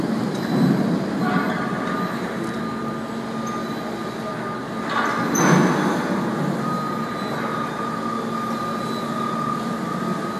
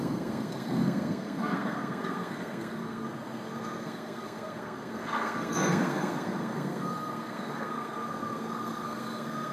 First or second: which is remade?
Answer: second